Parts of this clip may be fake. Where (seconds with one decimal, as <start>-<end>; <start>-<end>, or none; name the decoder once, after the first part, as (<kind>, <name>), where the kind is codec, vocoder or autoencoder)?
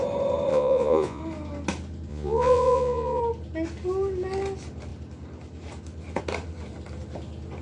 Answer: 0.5-1.2 (vocoder, Vocos); 2.1-3.2